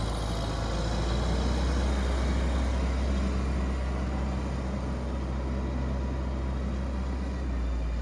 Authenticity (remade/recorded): recorded